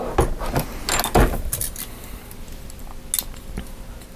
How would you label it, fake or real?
real